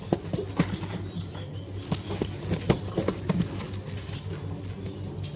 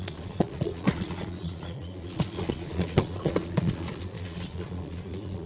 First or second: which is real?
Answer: first